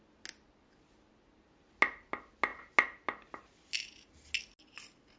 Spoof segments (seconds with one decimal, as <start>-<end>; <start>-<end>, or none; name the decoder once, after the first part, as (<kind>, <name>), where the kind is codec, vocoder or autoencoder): none

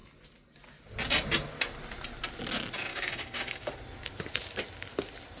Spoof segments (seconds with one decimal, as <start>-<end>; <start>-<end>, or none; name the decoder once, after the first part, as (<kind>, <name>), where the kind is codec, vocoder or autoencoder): 2.9-3.7 (codec, DAC)

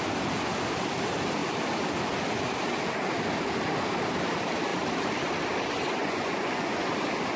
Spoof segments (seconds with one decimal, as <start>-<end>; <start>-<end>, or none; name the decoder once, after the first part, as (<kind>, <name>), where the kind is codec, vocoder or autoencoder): 6.0-6.9 (vocoder, Vocos)

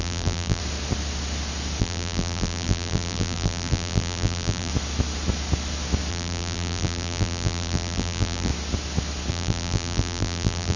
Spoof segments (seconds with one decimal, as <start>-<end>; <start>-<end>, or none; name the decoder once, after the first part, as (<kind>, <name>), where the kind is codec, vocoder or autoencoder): 0.0-0.6 (vocoder, BigVGAN v2); 1.8-4.7; 6.1-8.5; 9.3-10.8

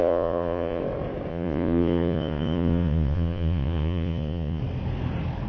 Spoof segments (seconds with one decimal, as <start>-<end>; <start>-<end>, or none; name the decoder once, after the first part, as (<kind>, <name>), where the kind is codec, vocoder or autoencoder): 0.0-0.8 (vocoder, Vocos); 1.3-4.6

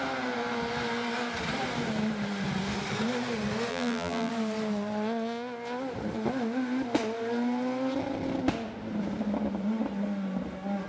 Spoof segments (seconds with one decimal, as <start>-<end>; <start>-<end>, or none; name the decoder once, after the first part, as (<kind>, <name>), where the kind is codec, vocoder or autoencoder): 3.7-4.3 (vocoder, BigVGAN v2)